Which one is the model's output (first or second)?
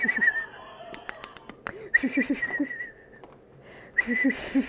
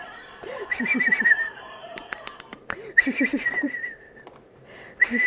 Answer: second